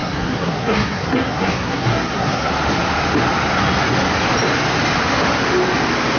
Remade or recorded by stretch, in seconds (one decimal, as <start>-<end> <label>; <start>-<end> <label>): 0.0-2.5 remade; 2.5-6.2 recorded